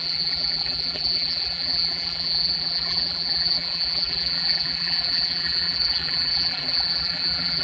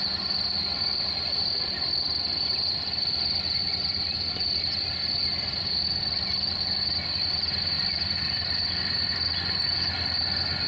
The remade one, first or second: first